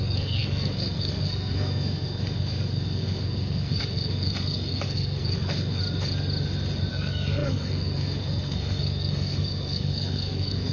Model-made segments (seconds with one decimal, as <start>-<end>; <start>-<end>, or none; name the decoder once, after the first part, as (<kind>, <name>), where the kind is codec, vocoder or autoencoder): 0.0-5.8 (codec, SNAC); 6.9-10.7